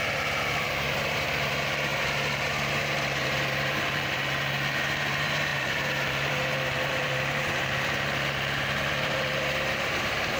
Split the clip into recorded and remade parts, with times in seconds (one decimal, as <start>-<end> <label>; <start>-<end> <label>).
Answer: 0.0-10.4 remade